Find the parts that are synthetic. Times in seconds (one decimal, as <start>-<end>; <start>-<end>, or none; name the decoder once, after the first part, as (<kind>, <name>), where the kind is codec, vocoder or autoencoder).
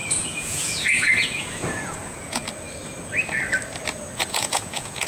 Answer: 0.0-2.4 (vocoder, Vocos); 4.2-5.1